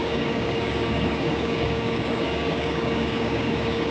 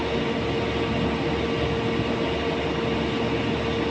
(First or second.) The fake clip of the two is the first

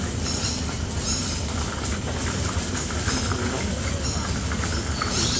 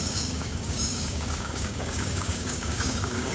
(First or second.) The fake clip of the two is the second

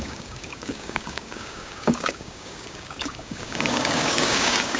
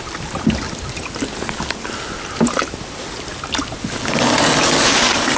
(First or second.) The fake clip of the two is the first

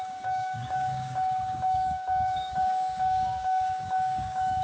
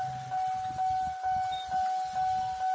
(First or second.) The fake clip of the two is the first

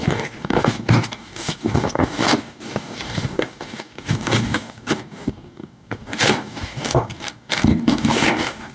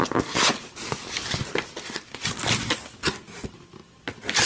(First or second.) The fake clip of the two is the first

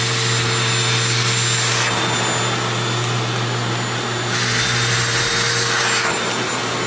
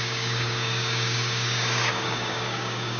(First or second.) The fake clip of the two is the second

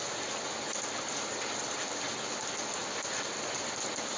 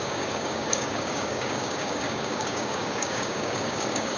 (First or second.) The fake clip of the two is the second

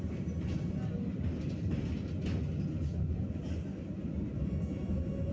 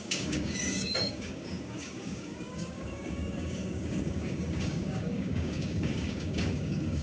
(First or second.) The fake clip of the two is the second